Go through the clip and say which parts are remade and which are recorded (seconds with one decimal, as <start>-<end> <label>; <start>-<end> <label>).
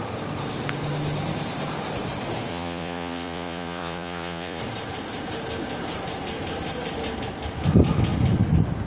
0.0-2.5 recorded; 2.5-4.6 remade; 4.6-8.9 recorded